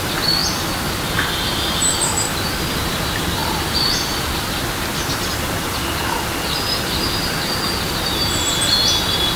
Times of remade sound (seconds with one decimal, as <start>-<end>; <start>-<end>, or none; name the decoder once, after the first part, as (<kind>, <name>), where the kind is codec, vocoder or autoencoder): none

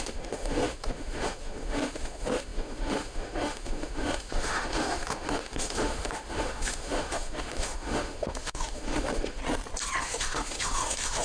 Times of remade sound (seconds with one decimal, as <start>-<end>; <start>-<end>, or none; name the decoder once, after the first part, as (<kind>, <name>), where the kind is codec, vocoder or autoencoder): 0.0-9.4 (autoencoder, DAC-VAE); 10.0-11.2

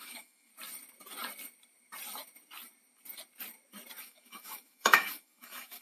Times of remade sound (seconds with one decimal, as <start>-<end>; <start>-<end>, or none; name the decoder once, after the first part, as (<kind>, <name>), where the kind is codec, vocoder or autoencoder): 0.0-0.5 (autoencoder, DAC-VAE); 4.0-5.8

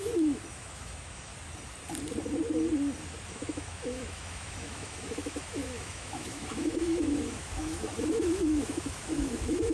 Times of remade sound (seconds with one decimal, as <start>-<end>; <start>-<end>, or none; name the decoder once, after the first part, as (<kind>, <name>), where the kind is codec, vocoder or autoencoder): 0.0-1.3 (autoencoder, DAC-VAE); 3.3-9.7